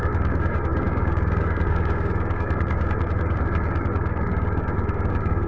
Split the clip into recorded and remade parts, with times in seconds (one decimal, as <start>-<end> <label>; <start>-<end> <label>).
0.0-5.5 remade